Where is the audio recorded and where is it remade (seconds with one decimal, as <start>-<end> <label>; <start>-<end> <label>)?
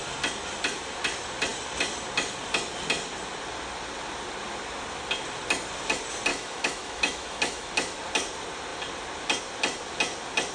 0.0-6.3 recorded; 6.3-7.7 remade; 7.7-10.5 recorded